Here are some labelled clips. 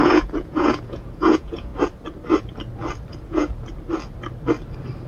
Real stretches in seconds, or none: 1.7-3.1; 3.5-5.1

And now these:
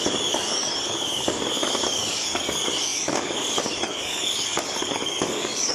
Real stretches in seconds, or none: none

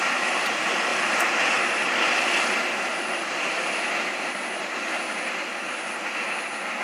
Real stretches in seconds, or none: 0.0-6.8

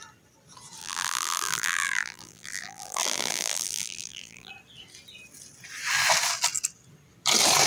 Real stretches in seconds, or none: 0.0-0.8; 4.5-7.7